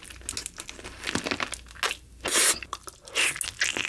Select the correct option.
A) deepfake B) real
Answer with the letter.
B